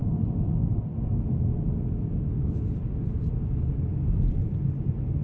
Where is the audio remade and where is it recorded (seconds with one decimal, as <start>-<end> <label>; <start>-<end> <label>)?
0.0-1.1 remade; 1.1-2.1 recorded; 2.1-5.2 remade